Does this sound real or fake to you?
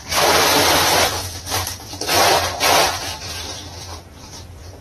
real